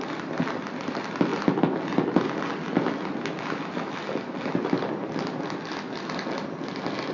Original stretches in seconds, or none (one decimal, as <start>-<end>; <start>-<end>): 0.0-7.1